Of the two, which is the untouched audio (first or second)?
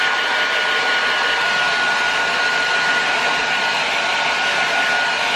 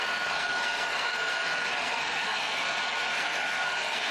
first